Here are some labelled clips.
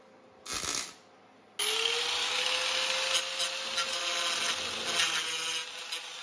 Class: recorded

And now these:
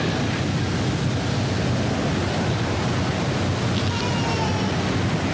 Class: recorded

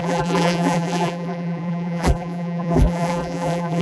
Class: remade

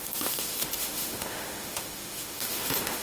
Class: remade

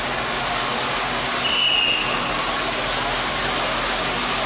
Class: recorded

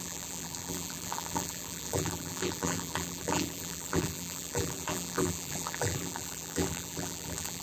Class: remade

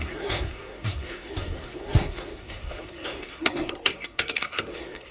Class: remade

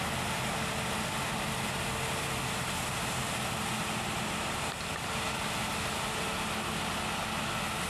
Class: recorded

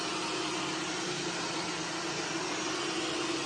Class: recorded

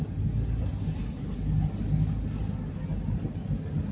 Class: recorded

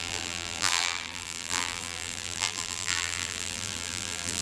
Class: remade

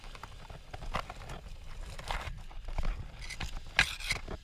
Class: recorded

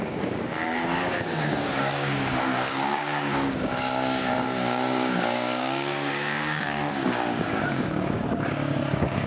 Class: remade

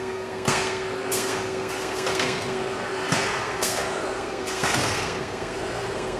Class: remade